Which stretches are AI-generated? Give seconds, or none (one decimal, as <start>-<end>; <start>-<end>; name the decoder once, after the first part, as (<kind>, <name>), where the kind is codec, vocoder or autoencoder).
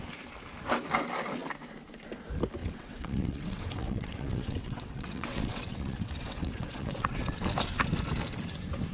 2.6-7.5 (vocoder, WaveNeXt)